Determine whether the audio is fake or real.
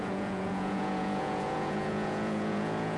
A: fake